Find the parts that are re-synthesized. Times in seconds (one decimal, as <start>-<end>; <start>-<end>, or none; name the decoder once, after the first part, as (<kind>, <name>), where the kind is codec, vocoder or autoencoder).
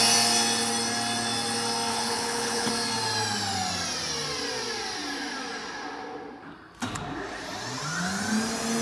1.9-2.7 (codec, HILCodec)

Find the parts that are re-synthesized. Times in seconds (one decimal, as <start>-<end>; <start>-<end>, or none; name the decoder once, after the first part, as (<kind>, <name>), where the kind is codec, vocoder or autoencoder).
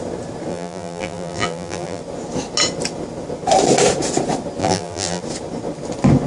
0.5-2.0 (vocoder, BigVGAN v2); 4.6-5.2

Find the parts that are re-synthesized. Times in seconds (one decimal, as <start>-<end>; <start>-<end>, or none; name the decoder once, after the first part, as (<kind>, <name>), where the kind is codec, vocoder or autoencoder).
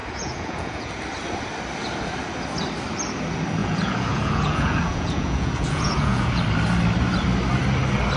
0.0-1.0 (vocoder, Vocos); 3.6-6.4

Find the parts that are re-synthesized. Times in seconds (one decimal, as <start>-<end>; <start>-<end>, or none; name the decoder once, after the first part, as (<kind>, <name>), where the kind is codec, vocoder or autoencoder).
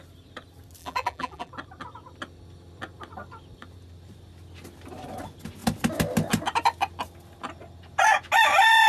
0.8-1.5 (vocoder, BigVGAN v2)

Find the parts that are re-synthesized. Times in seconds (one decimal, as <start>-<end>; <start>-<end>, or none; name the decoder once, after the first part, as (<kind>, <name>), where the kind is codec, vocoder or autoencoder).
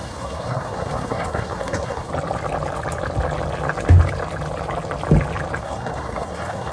0.0-2.1 (codec, SNAC); 5.6-6.7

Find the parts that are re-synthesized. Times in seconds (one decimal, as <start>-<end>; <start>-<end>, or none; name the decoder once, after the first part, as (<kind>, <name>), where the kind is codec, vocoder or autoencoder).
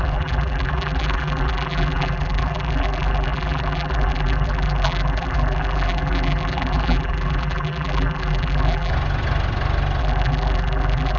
0.0-8.9 (vocoder, BigVGAN v2); 10.0-11.2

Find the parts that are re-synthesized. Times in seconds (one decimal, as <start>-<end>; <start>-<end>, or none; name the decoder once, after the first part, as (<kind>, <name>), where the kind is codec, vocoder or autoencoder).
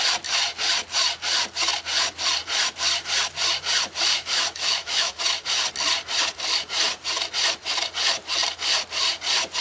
4.1-5.2 (autoencoder, DAC-VAE)